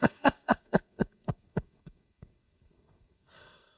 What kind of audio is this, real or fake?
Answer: fake